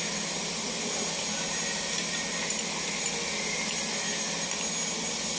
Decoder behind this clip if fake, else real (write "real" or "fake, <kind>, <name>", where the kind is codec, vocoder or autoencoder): real